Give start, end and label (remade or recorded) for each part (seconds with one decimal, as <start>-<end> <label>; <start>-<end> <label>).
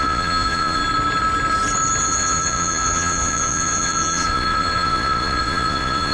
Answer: 0.0-0.8 remade; 0.8-2.0 recorded; 2.0-6.1 remade